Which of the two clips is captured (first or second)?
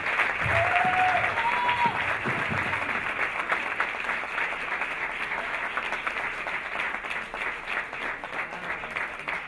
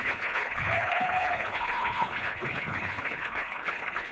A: first